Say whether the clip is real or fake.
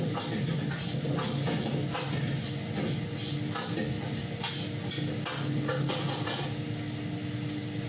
real